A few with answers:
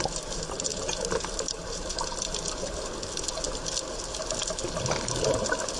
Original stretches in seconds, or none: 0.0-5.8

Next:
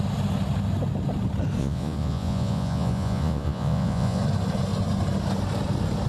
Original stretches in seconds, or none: 0.0-1.6; 4.2-6.1

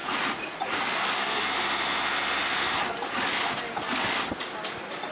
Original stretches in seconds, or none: 0.8-5.1

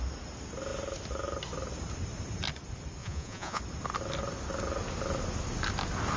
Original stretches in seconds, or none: 0.0-3.0; 3.6-6.2

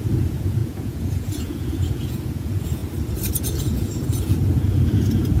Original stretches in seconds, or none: 2.8-3.4